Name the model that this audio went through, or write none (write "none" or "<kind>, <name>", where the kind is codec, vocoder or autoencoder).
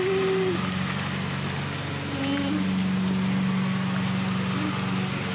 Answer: none